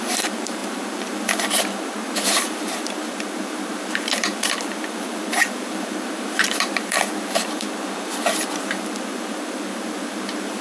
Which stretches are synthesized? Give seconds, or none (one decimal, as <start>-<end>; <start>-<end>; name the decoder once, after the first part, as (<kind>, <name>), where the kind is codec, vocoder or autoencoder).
0.0-10.6 (vocoder, BigVGAN v2)